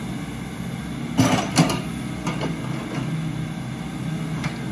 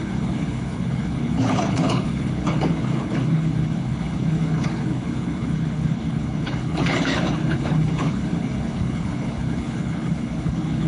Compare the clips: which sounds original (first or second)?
first